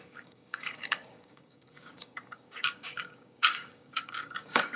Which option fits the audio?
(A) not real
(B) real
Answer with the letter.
A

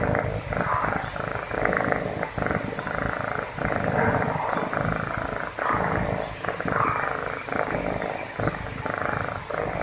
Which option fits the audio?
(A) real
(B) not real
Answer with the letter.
A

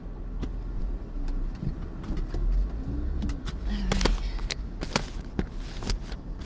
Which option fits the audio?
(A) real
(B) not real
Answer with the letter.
A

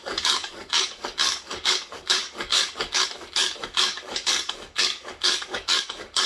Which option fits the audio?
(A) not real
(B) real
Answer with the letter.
A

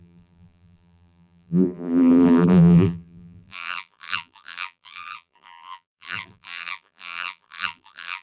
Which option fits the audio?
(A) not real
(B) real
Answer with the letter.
A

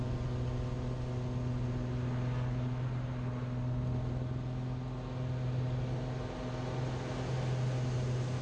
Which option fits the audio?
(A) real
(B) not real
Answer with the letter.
A